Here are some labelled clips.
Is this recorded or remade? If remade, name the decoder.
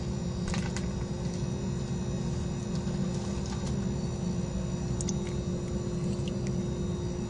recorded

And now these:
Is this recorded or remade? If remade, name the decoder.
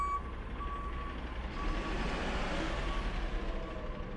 recorded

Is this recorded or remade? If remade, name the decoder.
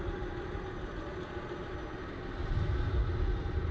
remade, vocoder, BigVGAN v2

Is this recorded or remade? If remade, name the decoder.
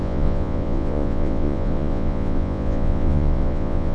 remade, vocoder, Vocos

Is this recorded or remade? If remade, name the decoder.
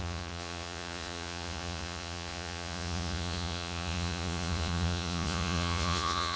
remade, vocoder, Vocos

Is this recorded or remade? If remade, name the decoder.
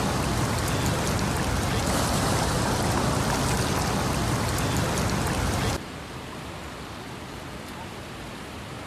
recorded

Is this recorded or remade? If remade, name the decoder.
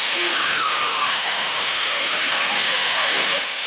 remade, autoencoder, DAC-VAE